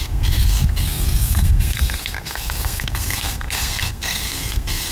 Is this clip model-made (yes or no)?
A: yes